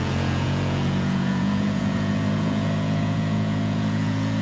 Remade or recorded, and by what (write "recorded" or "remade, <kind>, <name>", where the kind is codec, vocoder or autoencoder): remade, vocoder, Vocos